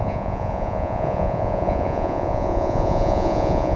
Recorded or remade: remade